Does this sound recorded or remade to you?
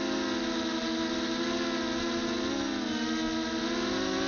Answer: recorded